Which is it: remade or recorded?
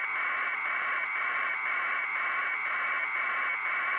remade